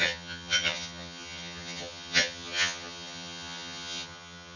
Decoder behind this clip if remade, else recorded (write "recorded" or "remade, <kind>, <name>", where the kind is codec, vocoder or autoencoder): remade, vocoder, HiFi-GAN